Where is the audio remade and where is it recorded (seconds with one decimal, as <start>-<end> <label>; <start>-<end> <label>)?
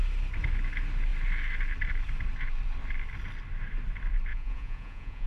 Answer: 0.0-4.3 recorded; 4.3-5.3 remade